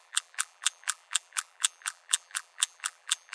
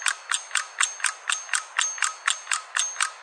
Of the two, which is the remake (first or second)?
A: first